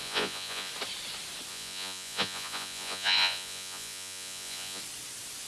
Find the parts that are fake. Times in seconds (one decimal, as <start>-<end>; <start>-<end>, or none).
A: 0.0-0.7; 1.5-4.8